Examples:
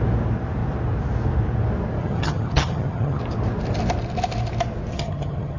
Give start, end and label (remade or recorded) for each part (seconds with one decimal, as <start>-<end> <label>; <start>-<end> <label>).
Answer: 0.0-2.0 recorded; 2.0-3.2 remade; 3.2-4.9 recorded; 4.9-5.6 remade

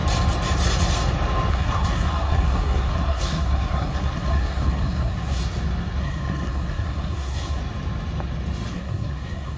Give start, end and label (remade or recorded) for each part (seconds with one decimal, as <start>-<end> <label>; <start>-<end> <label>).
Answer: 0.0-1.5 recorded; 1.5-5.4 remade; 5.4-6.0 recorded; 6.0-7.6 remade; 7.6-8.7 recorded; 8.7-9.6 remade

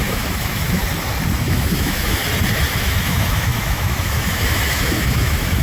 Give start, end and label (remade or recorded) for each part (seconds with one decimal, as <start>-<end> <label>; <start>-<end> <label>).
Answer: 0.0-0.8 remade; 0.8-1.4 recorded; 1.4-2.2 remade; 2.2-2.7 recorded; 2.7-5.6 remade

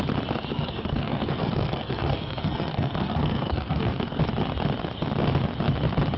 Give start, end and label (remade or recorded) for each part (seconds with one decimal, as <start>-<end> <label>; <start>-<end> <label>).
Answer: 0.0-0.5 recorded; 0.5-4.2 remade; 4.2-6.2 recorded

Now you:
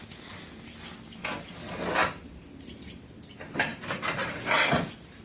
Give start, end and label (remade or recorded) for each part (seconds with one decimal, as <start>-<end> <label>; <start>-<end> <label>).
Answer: 0.0-1.5 remade; 1.5-2.0 recorded; 2.0-2.7 remade; 2.7-3.7 recorded; 3.7-5.2 remade